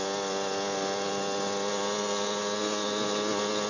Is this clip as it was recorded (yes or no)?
yes